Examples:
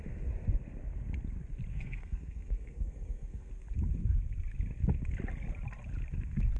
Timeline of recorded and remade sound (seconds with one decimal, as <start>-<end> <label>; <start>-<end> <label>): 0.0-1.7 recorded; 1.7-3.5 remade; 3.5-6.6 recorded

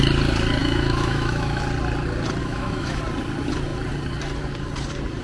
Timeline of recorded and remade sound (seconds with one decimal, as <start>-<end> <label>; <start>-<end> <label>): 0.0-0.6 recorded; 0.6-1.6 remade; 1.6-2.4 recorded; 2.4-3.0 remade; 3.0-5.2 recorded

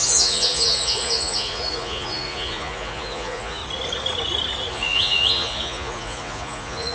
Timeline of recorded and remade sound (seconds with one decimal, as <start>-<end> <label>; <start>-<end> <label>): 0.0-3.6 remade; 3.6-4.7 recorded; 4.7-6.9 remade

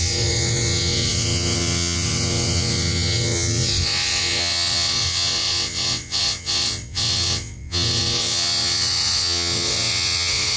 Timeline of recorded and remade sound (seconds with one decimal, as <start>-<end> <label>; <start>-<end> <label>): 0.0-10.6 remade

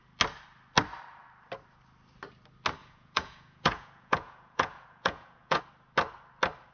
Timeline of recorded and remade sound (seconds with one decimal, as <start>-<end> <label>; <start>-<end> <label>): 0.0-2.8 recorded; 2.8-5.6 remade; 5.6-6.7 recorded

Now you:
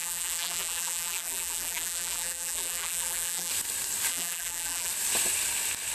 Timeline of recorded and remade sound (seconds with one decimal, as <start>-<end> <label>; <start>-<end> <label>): 0.0-3.5 remade; 3.5-4.1 recorded; 4.1-4.9 remade; 4.9-5.9 recorded

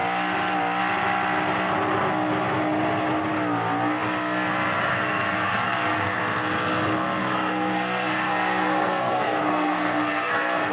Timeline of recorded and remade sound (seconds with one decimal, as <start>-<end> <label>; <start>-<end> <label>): 0.0-4.9 recorded; 4.9-6.2 remade; 6.2-7.2 recorded; 7.2-10.7 remade